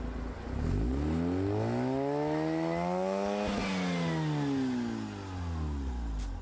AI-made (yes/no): no